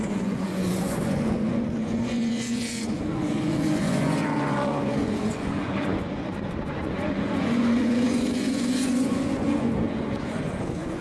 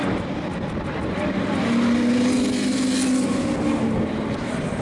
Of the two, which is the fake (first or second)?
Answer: first